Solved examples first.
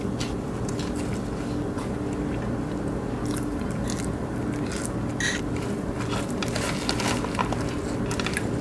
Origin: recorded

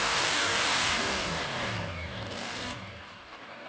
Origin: remade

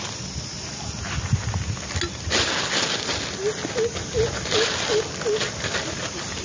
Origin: recorded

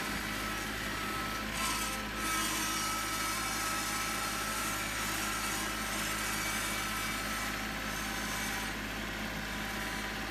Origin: recorded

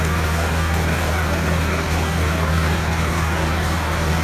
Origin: remade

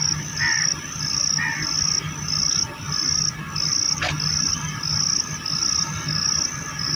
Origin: recorded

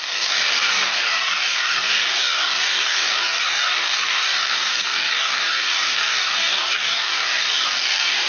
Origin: remade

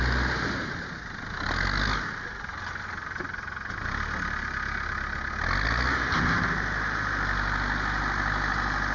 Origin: recorded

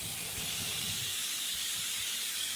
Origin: remade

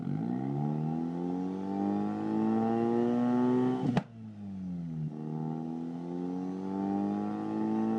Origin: recorded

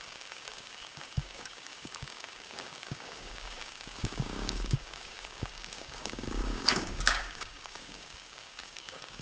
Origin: remade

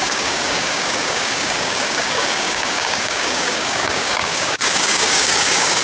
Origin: remade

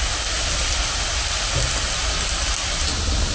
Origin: recorded